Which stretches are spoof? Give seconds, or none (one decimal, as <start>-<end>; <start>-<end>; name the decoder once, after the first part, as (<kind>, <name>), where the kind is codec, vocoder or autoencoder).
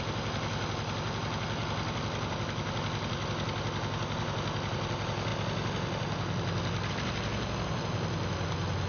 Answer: none